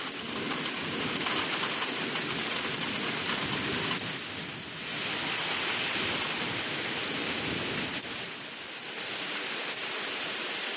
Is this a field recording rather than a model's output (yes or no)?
yes